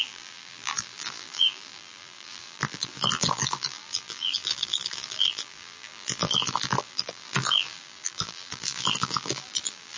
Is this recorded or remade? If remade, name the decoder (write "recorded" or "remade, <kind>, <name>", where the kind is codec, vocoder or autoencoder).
remade, vocoder, BigVGAN v2